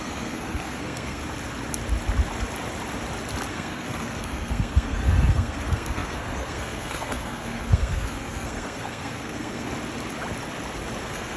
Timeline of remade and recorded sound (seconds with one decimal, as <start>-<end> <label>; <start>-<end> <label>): 0.0-1.2 remade; 1.2-3.5 recorded; 3.5-9.7 remade; 9.7-11.0 recorded; 11.0-11.4 remade